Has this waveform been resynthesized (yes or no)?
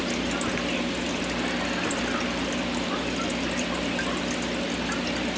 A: no